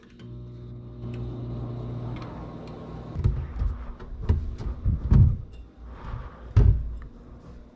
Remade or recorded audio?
recorded